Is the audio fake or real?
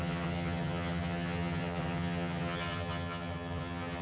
fake